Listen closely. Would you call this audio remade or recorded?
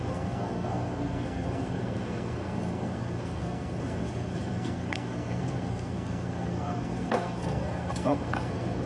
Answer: remade